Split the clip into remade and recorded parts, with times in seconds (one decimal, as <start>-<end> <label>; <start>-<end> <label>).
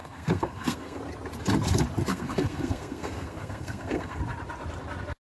0.0-1.0 remade; 1.0-2.1 recorded; 2.1-4.2 remade; 4.2-5.3 recorded